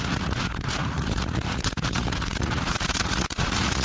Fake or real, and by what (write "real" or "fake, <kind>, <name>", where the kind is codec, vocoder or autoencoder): fake, vocoder, Vocos